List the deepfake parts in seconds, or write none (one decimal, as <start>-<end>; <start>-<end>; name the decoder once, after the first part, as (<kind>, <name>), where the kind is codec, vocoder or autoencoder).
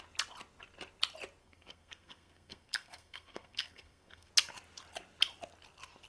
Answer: 1.4-4.3 (codec, SNAC)